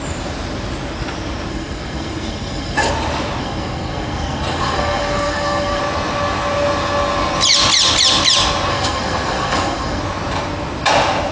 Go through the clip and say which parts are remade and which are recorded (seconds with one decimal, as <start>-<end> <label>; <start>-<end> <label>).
0.0-1.5 recorded; 1.5-2.9 remade; 2.9-3.4 recorded; 3.4-5.8 remade; 5.8-8.7 recorded; 8.7-10.0 remade; 10.0-11.3 recorded